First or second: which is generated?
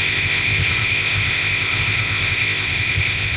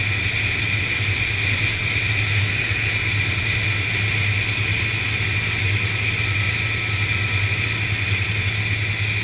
first